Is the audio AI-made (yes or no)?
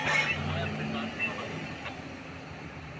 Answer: no